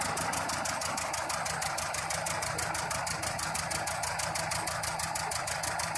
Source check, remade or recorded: recorded